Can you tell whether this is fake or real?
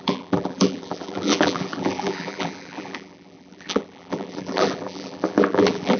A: fake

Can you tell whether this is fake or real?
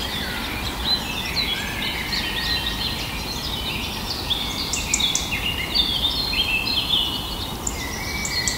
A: real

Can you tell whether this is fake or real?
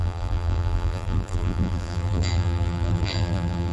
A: fake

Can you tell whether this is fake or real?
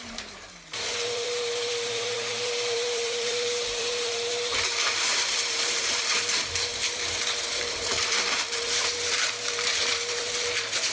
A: fake